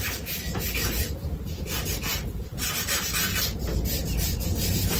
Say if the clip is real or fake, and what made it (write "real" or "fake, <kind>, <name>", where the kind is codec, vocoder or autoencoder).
real